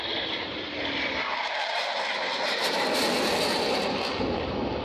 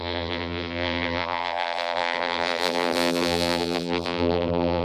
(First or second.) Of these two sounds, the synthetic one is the second